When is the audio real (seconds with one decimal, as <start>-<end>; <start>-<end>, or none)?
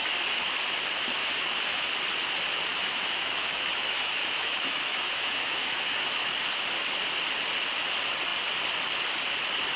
0.0-1.2; 1.9-2.7; 6.3-9.8